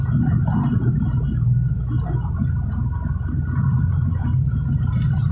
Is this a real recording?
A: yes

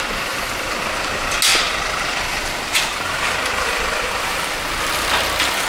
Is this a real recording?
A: yes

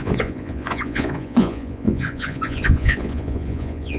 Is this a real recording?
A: no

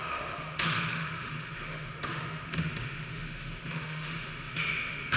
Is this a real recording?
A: no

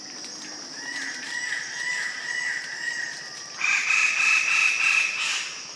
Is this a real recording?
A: yes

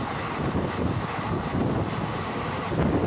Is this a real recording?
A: yes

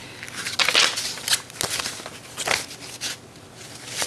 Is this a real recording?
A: yes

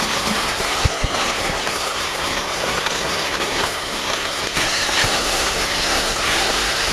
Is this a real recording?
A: no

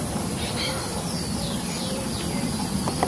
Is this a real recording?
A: no